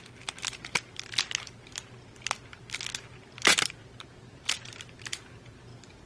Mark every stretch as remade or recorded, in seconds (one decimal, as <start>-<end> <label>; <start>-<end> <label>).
0.0-3.8 recorded; 3.8-5.5 remade; 5.5-6.1 recorded